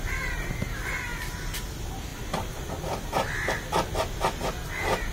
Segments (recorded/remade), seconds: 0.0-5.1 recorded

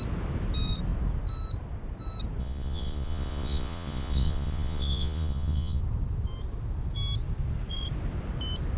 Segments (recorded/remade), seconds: 0.0-2.4 recorded; 2.4-5.8 remade; 5.8-8.8 recorded

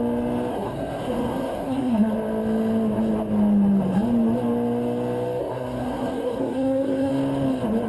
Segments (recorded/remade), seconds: 0.0-0.5 recorded; 0.5-2.1 remade; 2.1-5.4 recorded; 5.4-7.1 remade; 7.1-7.9 recorded

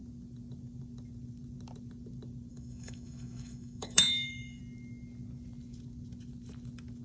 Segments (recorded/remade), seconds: 0.0-2.5 recorded; 2.5-4.6 remade; 4.6-7.0 recorded

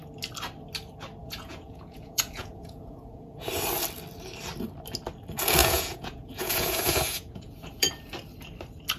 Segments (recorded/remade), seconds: 0.0-1.2 recorded; 1.2-3.5 remade; 3.5-5.6 recorded; 5.6-7.9 remade; 7.9-9.0 recorded

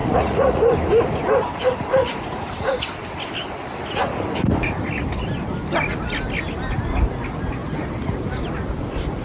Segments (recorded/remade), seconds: 0.0-0.6 remade; 0.6-2.0 recorded; 2.0-2.8 remade; 2.8-9.2 recorded

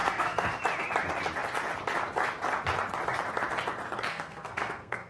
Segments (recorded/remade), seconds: 0.0-0.5 remade; 0.5-4.1 recorded; 4.1-5.1 remade

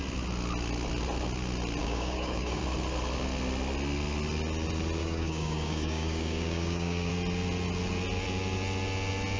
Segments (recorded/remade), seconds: 0.0-1.8 recorded; 1.8-2.6 remade; 2.6-5.0 recorded; 5.0-7.1 remade; 7.1-9.4 recorded